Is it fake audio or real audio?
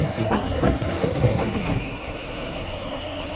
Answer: fake